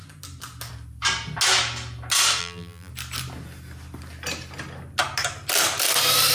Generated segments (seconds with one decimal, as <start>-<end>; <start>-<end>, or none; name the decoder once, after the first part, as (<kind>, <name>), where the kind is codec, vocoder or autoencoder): 2.4-2.9 (vocoder, BigVGAN v2)